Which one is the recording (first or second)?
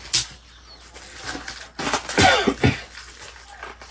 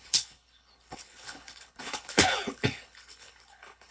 first